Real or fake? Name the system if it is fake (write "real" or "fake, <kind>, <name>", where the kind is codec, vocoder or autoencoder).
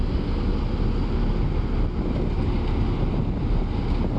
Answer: real